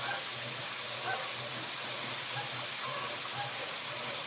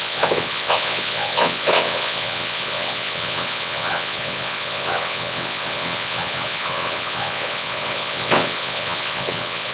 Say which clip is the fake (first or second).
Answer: second